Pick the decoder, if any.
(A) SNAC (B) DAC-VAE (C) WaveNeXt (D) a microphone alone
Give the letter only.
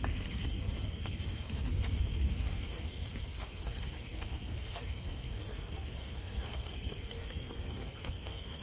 A